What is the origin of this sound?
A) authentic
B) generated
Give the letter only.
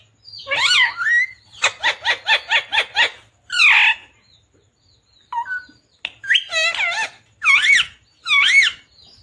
A